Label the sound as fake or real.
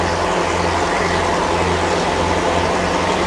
real